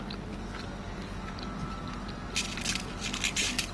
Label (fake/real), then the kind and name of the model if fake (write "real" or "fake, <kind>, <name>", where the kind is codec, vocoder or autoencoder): real